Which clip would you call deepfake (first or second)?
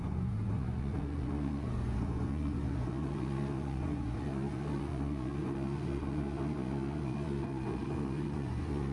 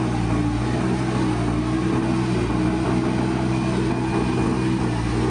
first